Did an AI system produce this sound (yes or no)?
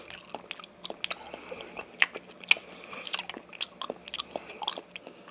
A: no